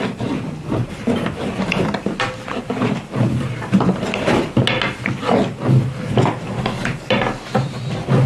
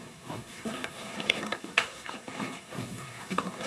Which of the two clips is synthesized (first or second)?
second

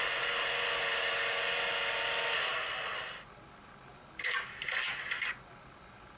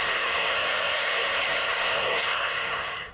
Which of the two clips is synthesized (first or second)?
second